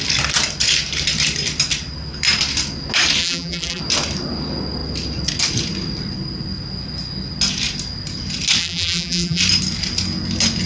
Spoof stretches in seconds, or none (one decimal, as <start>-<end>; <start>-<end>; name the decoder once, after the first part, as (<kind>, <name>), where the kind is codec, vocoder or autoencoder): 3.2-3.8 (vocoder, BigVGAN v2); 8.6-9.4